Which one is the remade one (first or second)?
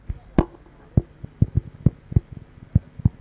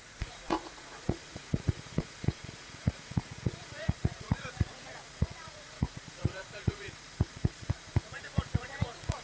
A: second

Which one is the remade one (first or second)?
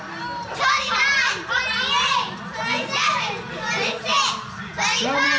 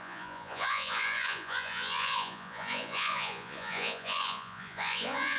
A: second